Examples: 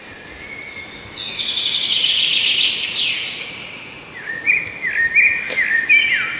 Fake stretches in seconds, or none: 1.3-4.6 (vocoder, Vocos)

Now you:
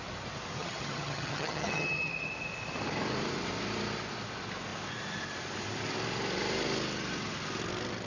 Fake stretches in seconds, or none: 0.6-2.1 (vocoder, HiFi-GAN)

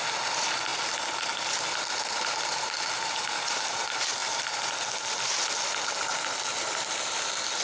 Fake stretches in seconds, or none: none

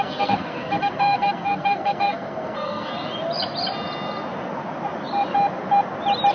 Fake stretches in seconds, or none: 0.0-2.9 (codec, SNAC)